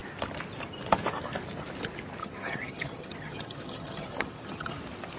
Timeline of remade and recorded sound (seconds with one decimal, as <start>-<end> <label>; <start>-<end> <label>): 0.0-2.2 recorded; 2.2-4.8 remade; 4.8-5.2 recorded